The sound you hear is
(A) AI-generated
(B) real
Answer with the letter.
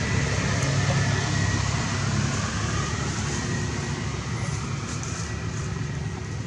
B